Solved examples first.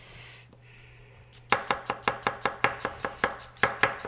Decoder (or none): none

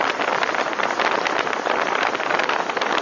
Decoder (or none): none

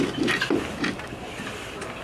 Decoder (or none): none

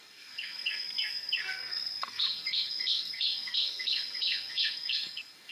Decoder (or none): codec, SNAC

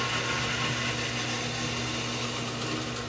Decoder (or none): none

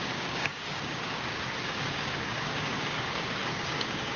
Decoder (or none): codec, DAC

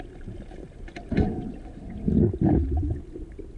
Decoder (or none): none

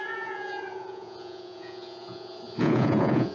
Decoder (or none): vocoder, Vocos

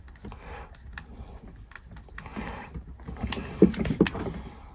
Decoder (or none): none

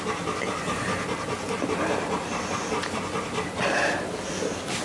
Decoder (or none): none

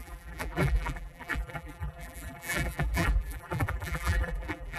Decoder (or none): vocoder, BigVGAN v2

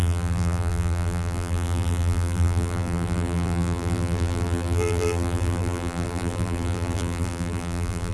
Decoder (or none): vocoder, BigVGAN v2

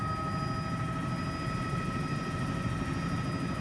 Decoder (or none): none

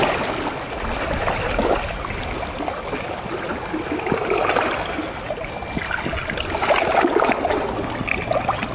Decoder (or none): none